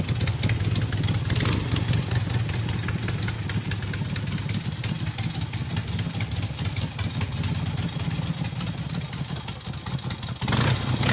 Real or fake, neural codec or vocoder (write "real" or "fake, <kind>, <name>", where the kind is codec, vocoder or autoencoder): real